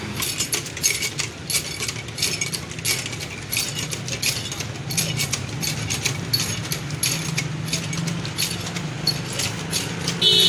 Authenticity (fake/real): real